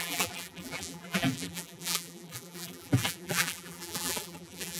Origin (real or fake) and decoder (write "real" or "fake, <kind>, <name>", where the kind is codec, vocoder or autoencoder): fake, vocoder, BigVGAN v2